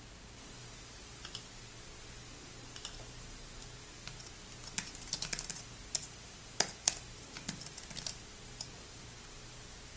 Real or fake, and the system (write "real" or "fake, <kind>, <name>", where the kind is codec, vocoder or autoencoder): real